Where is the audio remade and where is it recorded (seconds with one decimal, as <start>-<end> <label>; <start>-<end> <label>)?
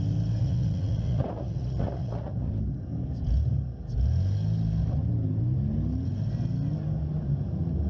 0.0-0.4 recorded; 0.4-2.5 remade; 2.5-7.9 recorded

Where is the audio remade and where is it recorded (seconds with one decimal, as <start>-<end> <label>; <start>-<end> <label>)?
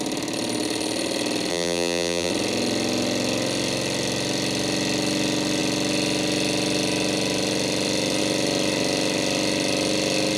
0.0-1.5 recorded; 1.5-2.3 remade; 2.3-10.4 recorded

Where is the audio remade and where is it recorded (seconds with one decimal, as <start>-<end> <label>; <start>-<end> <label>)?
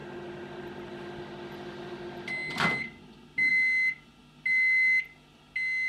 0.0-5.9 recorded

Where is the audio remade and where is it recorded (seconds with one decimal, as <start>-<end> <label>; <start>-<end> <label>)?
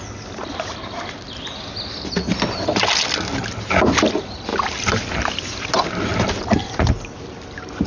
0.0-6.1 recorded; 6.1-6.6 remade; 6.6-7.9 recorded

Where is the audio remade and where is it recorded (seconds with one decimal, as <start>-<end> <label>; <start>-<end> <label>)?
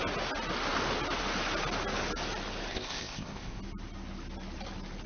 0.0-2.7 recorded; 2.7-3.6 remade; 3.6-5.1 recorded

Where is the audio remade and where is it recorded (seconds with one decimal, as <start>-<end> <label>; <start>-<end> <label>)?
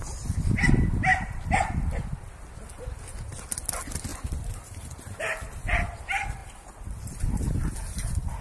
0.0-8.4 recorded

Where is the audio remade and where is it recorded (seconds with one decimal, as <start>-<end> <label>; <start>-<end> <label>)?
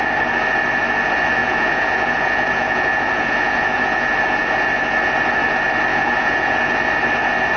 0.0-1.4 recorded; 1.4-4.1 remade; 4.1-5.9 recorded; 5.9-6.6 remade; 6.6-7.6 recorded